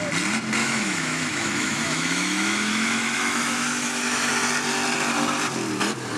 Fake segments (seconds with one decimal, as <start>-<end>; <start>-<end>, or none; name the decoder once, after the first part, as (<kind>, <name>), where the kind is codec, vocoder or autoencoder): 0.6-4.3 (autoencoder, DAC-VAE)